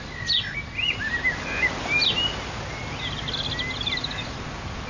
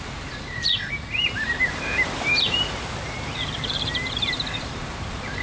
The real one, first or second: first